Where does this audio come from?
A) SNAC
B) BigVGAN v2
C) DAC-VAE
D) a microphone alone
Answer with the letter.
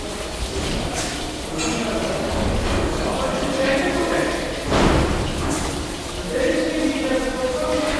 D